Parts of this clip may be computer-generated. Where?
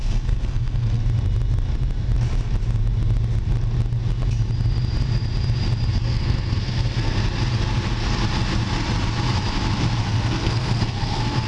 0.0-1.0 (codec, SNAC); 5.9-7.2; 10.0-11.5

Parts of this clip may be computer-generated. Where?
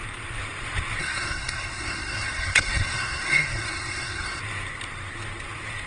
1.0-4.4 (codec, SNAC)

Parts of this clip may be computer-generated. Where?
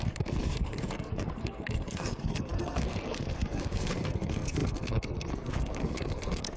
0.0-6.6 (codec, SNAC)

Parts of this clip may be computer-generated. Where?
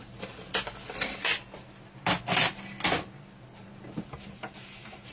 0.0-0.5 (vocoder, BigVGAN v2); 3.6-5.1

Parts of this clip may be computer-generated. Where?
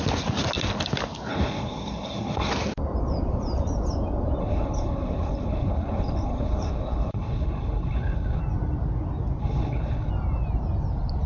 1.3-2.5 (codec, HILCodec); 4.4-8.4; 9.4-10.1